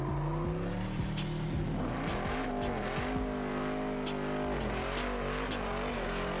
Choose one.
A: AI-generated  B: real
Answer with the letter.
B